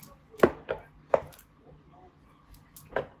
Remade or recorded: recorded